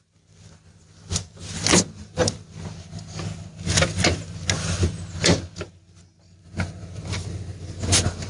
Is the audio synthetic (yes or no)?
no